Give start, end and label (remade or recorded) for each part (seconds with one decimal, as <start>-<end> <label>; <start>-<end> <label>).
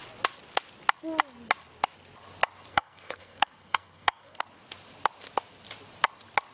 0.0-2.7 recorded; 2.7-4.4 remade; 4.4-6.5 recorded